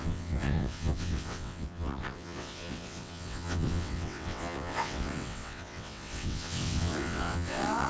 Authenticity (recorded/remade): remade